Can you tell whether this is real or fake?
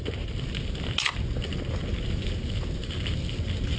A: real